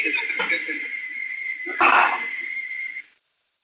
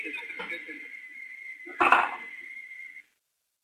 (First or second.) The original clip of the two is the second